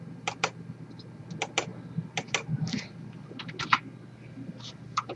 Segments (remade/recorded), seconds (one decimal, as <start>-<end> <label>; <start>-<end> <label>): 0.0-5.2 recorded